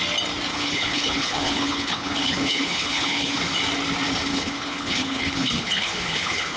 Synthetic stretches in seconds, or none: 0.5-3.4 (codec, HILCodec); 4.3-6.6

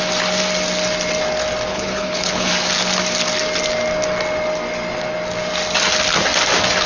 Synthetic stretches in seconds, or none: 1.7-2.5 (codec, HILCodec)

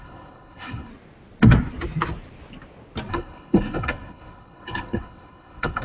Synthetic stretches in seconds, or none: 0.0-0.9 (codec, HILCodec); 3.1-5.8

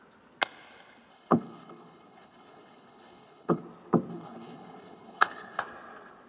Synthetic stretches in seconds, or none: 1.1-3.6 (codec, HILCodec); 4.1-5.6

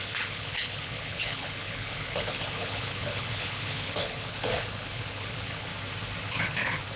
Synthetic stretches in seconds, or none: 0.0-5.7 (codec, HILCodec); 6.2-7.0